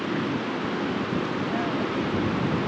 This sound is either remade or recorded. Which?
recorded